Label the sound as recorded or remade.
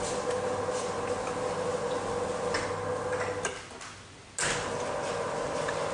recorded